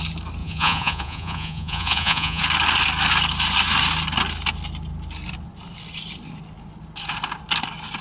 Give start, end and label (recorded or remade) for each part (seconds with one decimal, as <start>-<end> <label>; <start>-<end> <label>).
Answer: 0.0-0.4 recorded; 0.4-2.4 remade; 2.4-8.0 recorded